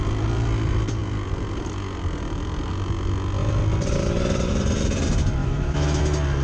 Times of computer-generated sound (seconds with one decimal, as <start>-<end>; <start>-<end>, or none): 5.4-6.0